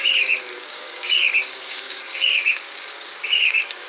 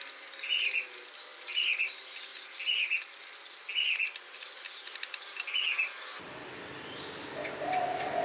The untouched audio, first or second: second